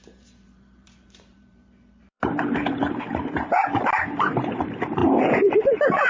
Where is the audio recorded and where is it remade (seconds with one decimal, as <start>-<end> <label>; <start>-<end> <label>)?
0.0-6.1 remade